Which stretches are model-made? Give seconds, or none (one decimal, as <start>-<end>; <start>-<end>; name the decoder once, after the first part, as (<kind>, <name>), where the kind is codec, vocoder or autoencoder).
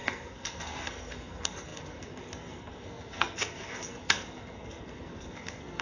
0.0-5.8 (codec, SNAC)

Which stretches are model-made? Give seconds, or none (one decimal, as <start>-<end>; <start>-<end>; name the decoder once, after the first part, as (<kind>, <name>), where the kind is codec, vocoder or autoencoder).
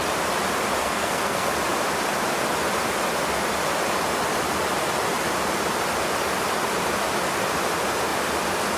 0.8-1.5 (codec, SNAC)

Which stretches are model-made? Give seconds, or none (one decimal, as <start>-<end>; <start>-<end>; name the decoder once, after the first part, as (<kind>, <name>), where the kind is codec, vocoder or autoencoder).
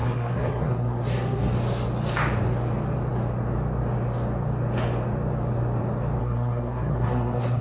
0.0-1.5 (codec, SNAC); 6.2-7.6